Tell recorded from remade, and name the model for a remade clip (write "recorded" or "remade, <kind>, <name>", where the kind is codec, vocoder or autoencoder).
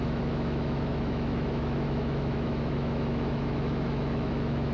remade, autoencoder, DAC-VAE